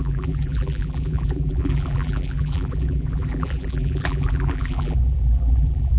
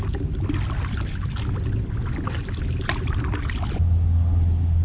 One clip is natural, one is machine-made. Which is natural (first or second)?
second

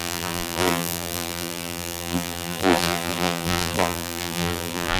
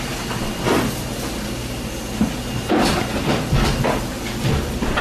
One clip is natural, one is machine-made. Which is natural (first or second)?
second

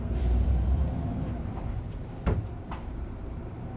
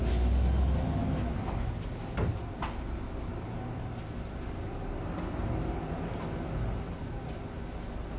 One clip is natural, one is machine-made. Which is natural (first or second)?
second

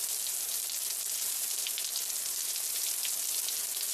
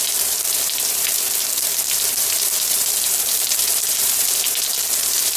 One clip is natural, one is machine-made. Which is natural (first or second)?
first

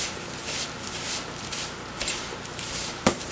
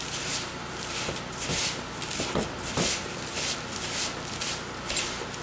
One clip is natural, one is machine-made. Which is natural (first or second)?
second